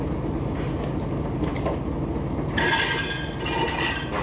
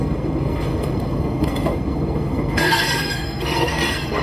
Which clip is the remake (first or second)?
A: second